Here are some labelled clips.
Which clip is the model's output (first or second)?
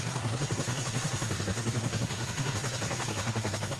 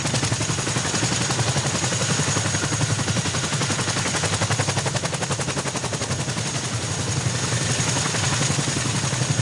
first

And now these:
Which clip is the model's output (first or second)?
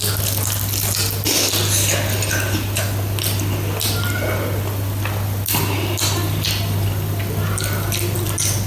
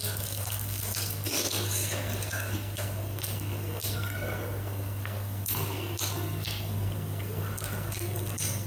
second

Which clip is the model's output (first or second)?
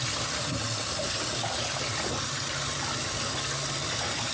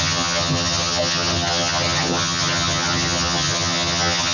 second